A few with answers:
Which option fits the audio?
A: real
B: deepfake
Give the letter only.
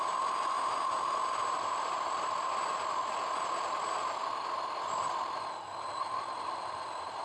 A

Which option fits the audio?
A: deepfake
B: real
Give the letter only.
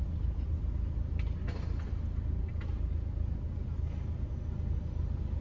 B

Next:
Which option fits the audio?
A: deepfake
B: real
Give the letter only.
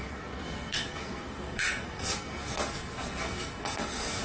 A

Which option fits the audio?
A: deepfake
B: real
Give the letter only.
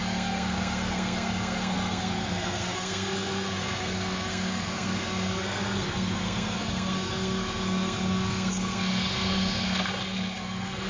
A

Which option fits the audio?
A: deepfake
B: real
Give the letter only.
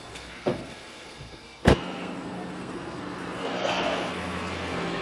A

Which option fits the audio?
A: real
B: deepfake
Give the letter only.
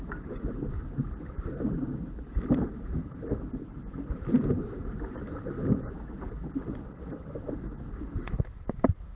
A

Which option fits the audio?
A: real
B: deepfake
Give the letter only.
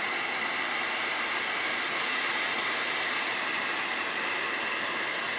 A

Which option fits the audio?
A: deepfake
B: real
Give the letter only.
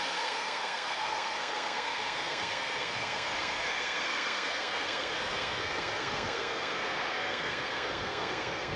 A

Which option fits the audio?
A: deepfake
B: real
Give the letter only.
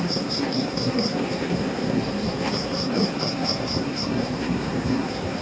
A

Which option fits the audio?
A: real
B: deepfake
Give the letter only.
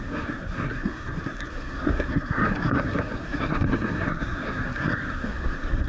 B